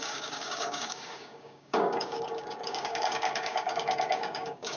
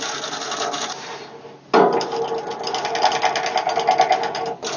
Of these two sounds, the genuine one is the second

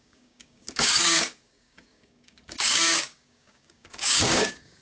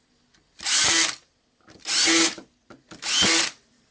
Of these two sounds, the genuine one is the second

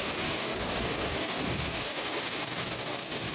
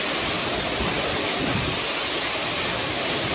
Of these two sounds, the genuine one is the second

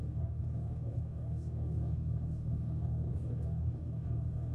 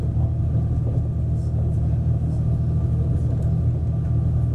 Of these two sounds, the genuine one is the second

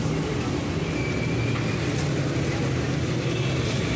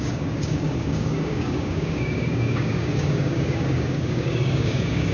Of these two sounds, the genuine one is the first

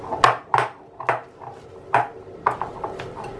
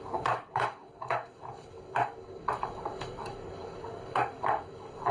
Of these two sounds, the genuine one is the first